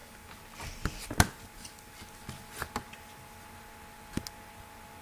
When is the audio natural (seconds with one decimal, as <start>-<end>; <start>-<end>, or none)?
0.0-5.0